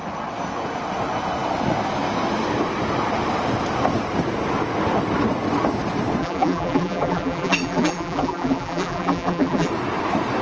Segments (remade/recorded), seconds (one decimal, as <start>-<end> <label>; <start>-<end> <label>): 0.0-6.2 recorded; 6.2-9.7 remade; 9.7-10.4 recorded